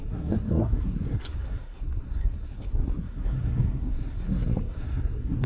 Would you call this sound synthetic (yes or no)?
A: yes